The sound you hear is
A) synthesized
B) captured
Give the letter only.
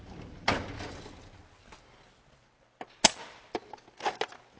B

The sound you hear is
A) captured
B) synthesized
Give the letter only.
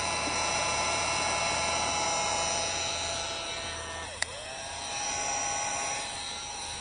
B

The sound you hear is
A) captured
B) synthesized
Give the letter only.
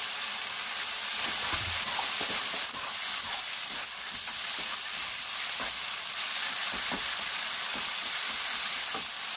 B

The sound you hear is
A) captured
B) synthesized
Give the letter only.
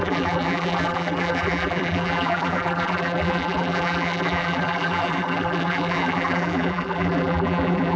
B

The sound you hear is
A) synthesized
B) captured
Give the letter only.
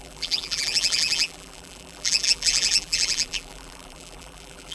A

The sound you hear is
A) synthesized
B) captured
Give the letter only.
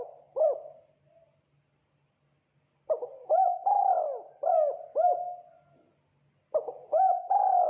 B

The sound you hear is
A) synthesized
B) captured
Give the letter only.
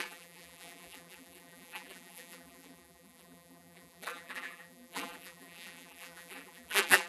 A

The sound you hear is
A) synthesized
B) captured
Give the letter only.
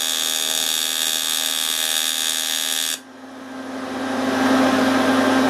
B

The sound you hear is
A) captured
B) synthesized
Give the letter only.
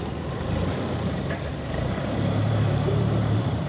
B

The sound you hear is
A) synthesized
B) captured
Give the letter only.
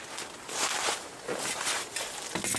B